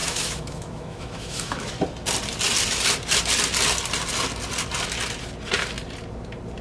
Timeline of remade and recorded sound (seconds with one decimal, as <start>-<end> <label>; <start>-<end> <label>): 0.0-1.7 remade; 1.7-6.6 recorded

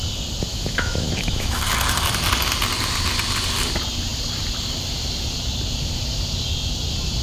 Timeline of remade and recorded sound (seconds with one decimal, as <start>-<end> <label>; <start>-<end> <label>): 0.0-0.5 recorded; 0.5-1.6 remade; 1.6-7.2 recorded

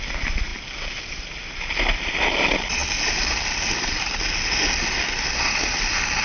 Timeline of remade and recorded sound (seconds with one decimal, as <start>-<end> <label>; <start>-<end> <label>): 0.0-6.2 recorded

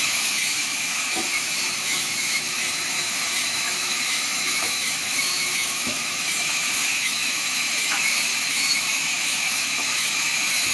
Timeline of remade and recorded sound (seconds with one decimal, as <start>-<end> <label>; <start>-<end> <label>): 0.0-10.7 remade

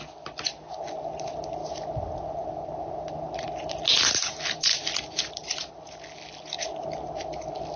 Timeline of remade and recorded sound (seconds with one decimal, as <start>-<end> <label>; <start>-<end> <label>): 0.0-7.8 recorded

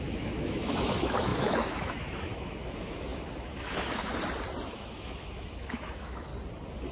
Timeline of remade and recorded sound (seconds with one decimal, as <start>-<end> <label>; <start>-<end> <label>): 0.0-4.1 remade; 4.1-4.7 recorded; 4.7-6.3 remade; 6.3-6.9 recorded